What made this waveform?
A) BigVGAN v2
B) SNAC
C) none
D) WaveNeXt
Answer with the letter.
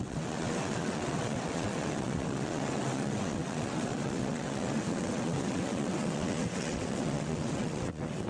D